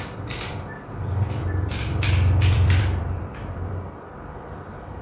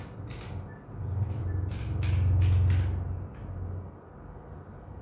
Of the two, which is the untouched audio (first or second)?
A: second